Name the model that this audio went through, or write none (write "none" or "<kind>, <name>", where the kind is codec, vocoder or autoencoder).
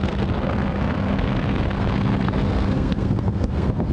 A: codec, SNAC